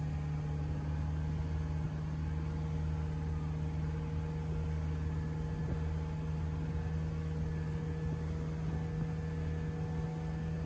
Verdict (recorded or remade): recorded